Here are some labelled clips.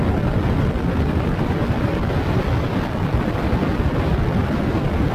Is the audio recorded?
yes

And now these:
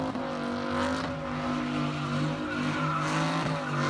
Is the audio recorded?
yes